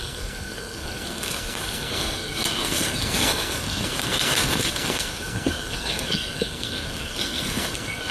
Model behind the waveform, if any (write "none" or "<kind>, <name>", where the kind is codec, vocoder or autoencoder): codec, SNAC